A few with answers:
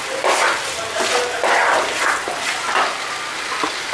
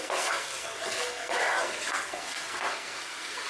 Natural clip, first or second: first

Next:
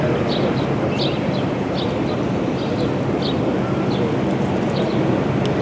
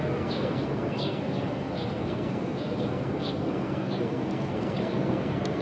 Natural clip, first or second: first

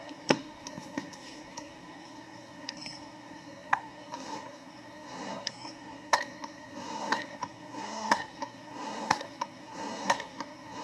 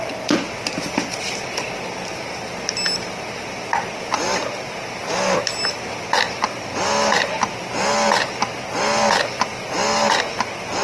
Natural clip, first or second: second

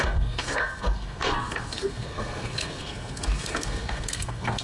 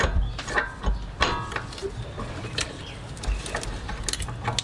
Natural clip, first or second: second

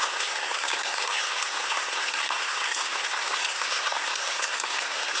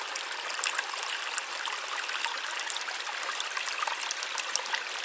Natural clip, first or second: second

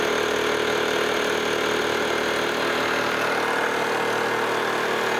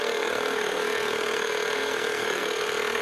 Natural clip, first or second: first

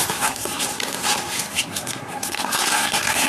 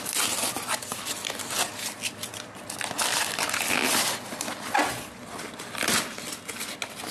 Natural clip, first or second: second